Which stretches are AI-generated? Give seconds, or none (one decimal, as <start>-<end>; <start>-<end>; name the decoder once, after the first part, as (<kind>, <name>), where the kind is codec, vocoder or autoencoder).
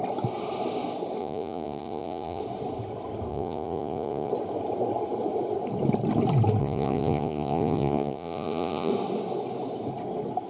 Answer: 1.2-2.4 (vocoder, Vocos); 3.3-4.3; 6.6-8.9